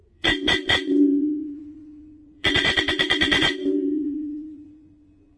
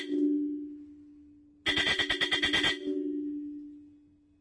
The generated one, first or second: first